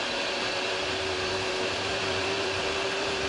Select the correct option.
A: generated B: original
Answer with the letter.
A